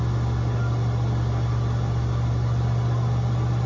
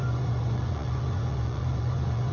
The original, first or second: first